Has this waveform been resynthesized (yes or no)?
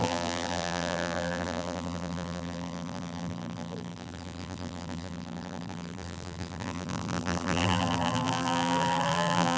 yes